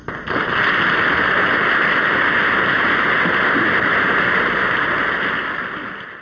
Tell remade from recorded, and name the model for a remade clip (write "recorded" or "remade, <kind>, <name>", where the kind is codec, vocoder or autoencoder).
recorded